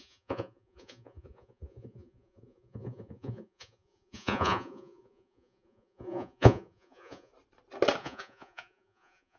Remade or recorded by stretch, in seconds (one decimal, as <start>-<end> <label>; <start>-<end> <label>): 0.0-7.3 remade; 7.3-8.0 recorded; 8.0-9.4 remade